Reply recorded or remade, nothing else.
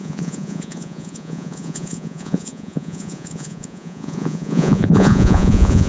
remade